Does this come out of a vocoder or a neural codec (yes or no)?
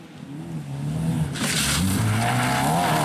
no